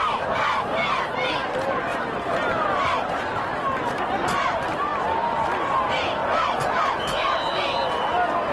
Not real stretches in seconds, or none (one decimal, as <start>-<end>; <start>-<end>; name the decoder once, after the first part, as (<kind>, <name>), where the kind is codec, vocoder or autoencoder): none